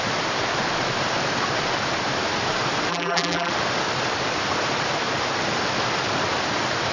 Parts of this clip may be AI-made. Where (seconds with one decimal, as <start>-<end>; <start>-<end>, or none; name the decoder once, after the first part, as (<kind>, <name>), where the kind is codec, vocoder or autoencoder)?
2.9-3.5 (vocoder, BigVGAN v2)